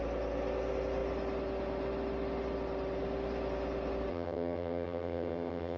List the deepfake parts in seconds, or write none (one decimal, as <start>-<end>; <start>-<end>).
4.1-5.8